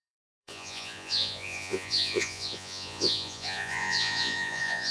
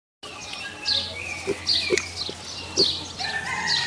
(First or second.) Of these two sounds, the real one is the second